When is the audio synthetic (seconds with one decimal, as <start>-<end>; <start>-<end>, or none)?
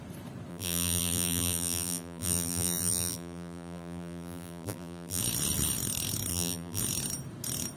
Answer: 0.5-5.2; 6.3-6.8